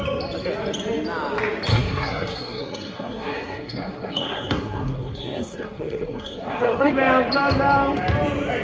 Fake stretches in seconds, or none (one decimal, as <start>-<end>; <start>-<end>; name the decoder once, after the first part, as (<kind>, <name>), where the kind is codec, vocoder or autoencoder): 1.7-6.9 (codec, SNAC)

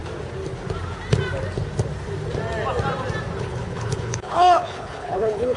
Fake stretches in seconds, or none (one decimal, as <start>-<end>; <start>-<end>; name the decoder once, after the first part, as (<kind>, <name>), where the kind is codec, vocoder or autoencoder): 3.4-5.6 (codec, HILCodec)

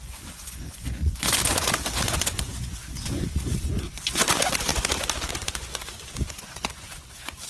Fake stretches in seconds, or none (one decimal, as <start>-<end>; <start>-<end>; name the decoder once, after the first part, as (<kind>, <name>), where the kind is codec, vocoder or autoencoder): 0.0-4.7 (vocoder, Vocos); 5.3-7.5

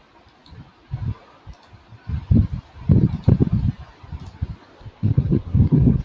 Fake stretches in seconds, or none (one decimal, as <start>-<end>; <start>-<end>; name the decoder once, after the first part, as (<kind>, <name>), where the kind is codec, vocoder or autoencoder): 4.7-6.0 (codec, SNAC)

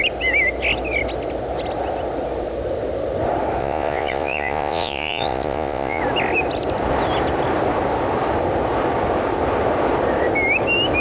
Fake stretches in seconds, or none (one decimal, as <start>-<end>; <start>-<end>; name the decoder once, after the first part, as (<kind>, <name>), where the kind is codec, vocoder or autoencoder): 3.6-6.0 (vocoder, Vocos)

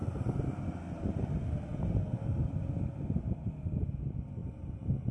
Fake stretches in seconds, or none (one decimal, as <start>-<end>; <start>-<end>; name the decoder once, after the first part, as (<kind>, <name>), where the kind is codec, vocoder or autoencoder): none